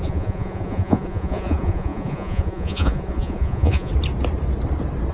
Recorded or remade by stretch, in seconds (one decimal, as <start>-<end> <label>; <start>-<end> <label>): 0.0-3.9 remade; 3.9-5.1 recorded